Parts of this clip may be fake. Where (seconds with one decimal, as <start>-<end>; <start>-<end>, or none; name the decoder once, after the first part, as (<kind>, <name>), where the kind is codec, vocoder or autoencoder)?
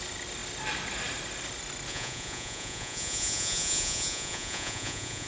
1.9-5.3 (vocoder, Vocos)